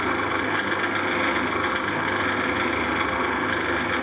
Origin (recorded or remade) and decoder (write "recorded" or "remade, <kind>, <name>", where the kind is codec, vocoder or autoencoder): recorded